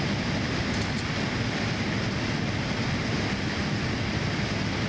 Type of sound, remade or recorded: recorded